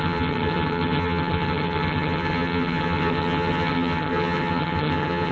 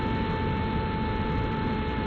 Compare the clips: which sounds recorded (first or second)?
second